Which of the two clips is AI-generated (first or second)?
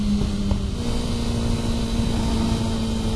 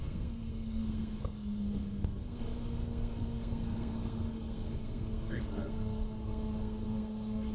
second